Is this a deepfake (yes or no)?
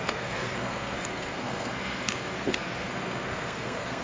yes